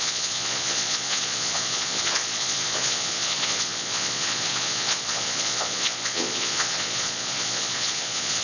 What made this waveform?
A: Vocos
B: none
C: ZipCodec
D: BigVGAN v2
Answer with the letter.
A